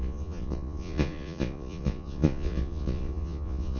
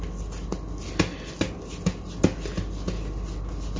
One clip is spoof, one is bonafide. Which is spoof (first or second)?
first